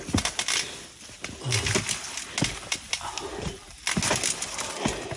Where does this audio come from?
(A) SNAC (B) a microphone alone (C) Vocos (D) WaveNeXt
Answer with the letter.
B